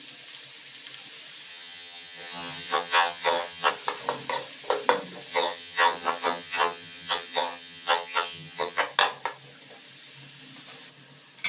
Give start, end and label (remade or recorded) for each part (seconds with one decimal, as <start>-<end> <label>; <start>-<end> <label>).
0.0-1.5 recorded; 1.5-3.7 remade; 3.7-5.3 recorded; 5.3-8.8 remade; 8.8-11.5 recorded

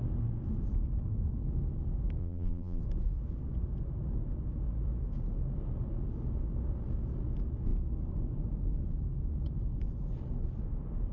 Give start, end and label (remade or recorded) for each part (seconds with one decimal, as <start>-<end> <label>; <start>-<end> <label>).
0.0-2.2 recorded; 2.2-2.8 remade; 2.8-11.1 recorded

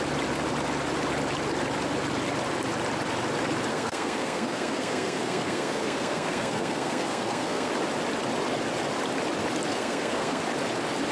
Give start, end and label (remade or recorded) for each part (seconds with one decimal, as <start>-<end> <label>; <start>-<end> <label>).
0.0-3.7 recorded; 3.7-7.7 remade; 7.7-9.7 recorded; 9.7-10.4 remade; 10.4-11.1 recorded